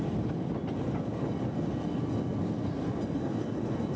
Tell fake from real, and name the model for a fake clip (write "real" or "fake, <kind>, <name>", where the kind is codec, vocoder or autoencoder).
real